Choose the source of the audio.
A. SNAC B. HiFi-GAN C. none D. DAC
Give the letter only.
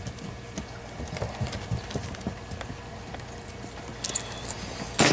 C